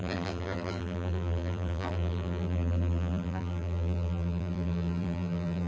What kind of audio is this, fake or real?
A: fake